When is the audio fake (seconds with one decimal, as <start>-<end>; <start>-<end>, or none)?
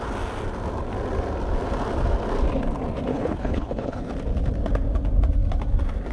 3.1-4.1